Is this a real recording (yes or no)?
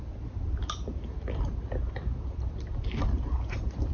yes